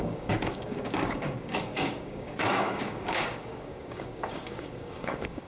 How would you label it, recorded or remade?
remade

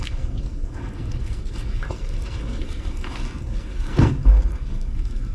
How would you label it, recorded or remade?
remade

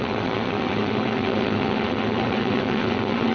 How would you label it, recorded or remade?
remade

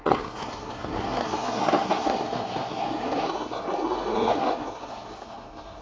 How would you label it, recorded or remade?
remade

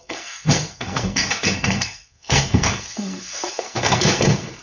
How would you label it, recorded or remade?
remade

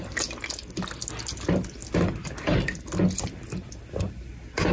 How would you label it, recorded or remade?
recorded